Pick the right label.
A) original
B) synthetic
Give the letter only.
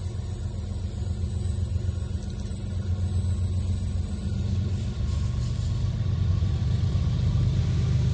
A